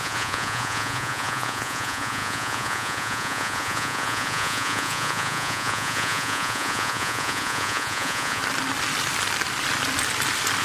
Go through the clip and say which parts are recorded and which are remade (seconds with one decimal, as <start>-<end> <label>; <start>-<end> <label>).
0.0-8.4 remade; 8.4-10.6 recorded